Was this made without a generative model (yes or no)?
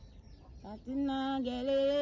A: yes